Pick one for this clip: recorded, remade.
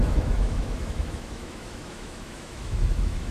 remade